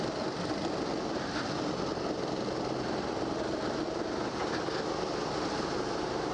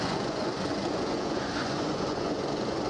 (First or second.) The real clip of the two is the first